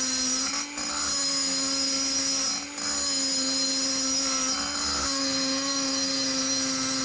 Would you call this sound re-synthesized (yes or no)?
no